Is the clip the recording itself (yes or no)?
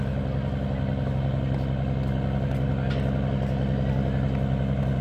yes